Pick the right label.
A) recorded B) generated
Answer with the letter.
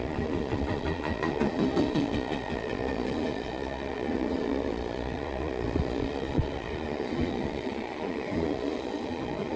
B